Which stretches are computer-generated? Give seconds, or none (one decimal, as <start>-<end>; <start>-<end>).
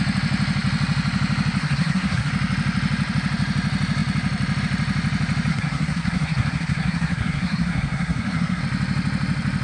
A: 1.6-2.3; 5.5-8.6